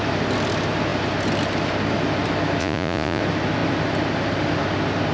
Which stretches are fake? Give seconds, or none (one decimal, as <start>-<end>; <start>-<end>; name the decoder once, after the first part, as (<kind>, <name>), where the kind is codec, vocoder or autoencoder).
2.6-3.2 (vocoder, Vocos)